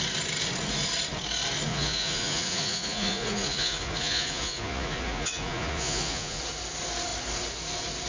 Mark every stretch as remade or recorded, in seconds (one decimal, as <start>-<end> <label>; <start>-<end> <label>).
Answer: 0.0-1.7 recorded; 1.7-6.4 remade; 6.4-8.1 recorded